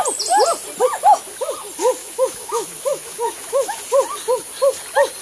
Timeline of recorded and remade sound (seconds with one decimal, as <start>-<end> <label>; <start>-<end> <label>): 0.0-2.0 recorded; 2.0-3.8 remade; 3.8-5.2 recorded

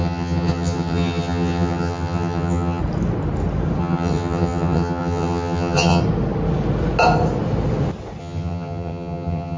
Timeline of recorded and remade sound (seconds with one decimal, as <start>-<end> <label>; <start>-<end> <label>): 0.0-2.8 remade; 2.8-3.8 recorded; 3.8-6.0 remade; 6.0-8.2 recorded; 8.2-9.6 remade

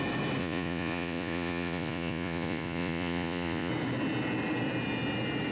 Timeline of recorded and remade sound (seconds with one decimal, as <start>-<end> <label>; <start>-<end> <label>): 0.0-0.4 recorded; 0.4-3.7 remade; 3.7-5.5 recorded

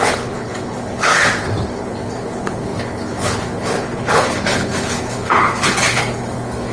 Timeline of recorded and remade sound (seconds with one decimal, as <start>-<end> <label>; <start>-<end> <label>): 0.0-1.1 remade; 1.1-1.7 recorded; 1.7-6.7 remade

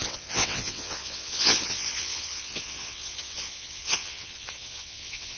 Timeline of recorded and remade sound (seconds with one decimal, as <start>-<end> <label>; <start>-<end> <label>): 0.0-5.4 remade

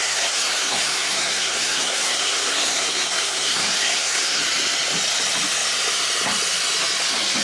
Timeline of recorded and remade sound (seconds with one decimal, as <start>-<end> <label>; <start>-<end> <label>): 0.0-4.4 remade; 4.4-7.4 recorded